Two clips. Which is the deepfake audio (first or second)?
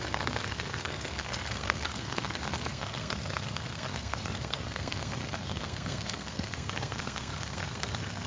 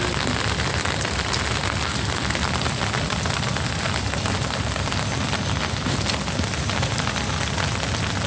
first